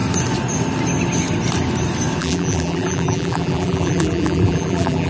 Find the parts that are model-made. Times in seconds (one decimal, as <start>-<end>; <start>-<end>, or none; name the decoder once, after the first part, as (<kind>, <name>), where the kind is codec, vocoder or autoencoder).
2.2-5.1 (vocoder, BigVGAN v2)